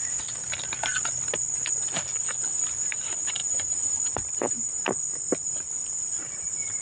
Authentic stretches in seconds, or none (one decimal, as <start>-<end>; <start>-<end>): 0.0-6.8